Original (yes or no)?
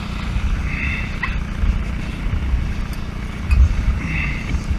yes